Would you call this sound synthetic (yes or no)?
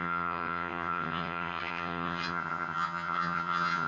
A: yes